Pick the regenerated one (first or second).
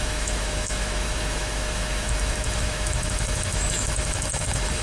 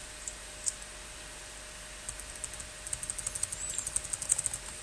first